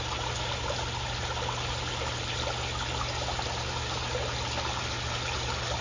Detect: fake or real real